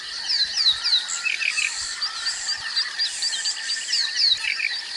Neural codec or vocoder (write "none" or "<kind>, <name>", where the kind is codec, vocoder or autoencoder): none